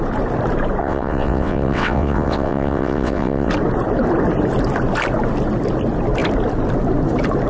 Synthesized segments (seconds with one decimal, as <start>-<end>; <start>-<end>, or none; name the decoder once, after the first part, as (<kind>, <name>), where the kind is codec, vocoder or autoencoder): 0.8-3.5 (vocoder, WaveNeXt)